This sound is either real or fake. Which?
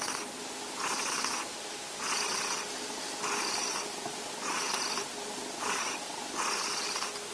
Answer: real